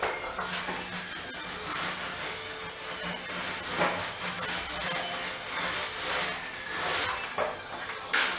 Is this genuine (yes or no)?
yes